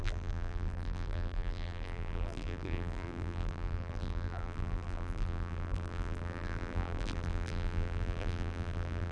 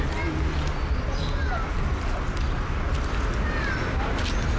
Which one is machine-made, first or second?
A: first